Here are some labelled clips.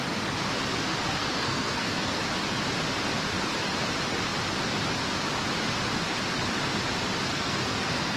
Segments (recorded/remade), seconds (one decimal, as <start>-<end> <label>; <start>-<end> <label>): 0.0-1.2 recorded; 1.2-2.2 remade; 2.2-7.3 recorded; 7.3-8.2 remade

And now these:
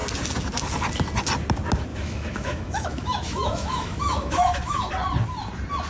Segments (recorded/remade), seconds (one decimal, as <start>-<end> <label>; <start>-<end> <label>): 0.0-1.9 recorded; 1.9-4.9 remade; 4.9-5.9 recorded

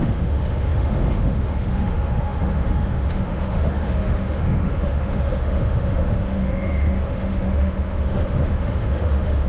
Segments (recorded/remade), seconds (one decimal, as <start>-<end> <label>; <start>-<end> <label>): 0.0-9.5 remade

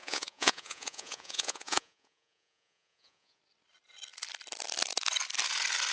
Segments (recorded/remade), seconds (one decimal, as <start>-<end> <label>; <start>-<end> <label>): 0.0-3.4 remade; 3.4-5.9 recorded